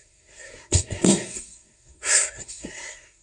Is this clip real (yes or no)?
no